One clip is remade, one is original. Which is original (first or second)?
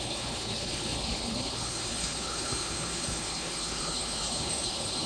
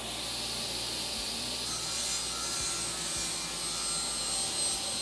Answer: second